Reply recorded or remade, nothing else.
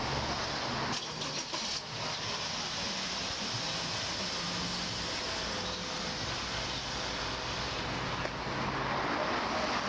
recorded